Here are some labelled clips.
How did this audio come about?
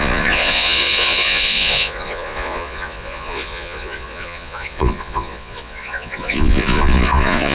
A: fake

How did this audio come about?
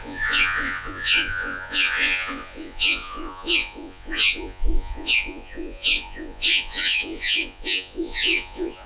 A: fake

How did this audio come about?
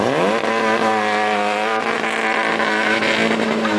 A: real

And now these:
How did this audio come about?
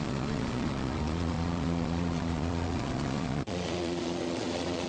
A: fake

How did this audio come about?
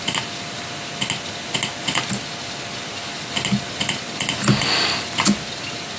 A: real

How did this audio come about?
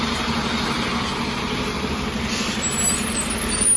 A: real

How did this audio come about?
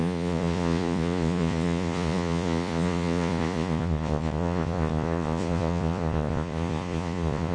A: fake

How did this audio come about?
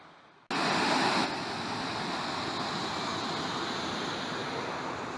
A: real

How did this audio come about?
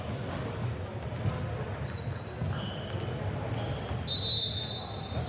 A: real